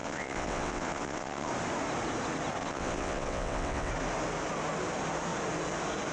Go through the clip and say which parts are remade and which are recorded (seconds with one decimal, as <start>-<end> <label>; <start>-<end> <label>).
0.0-1.5 remade; 1.5-2.6 recorded; 2.6-3.9 remade; 3.9-6.1 recorded